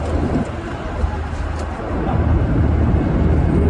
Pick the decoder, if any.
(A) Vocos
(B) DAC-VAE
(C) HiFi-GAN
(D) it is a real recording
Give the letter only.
D